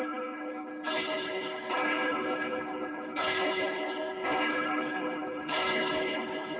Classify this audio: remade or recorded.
remade